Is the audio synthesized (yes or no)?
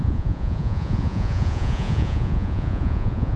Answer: yes